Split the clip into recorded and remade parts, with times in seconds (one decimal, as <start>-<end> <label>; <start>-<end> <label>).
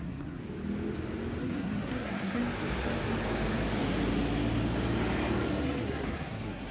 0.0-0.4 remade; 0.4-1.4 recorded; 1.4-2.4 remade; 2.4-5.6 recorded; 5.6-6.7 remade